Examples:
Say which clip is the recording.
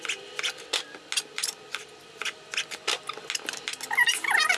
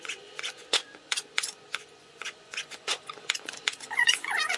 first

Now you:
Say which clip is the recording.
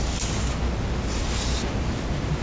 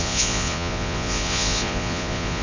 first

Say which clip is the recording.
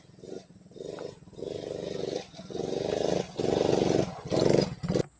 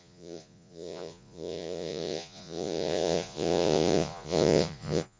first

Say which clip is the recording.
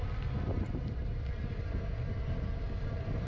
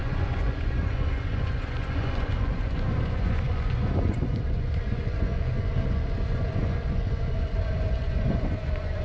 first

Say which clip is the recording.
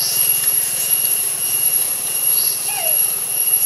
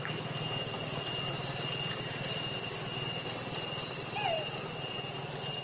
second